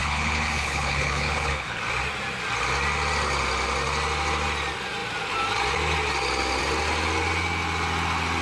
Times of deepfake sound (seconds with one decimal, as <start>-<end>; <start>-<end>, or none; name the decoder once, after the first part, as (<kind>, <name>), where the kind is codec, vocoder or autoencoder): 0.0-1.8 (codec, HILCodec)